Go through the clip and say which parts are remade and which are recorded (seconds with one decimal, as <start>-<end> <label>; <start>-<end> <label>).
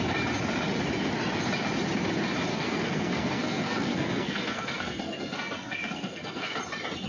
0.0-2.5 recorded; 2.5-6.6 remade; 6.6-7.1 recorded